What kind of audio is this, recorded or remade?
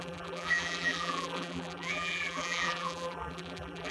remade